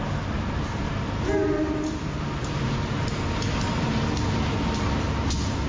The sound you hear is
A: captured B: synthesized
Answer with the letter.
A